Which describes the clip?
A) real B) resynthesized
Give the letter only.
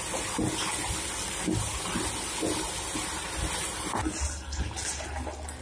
A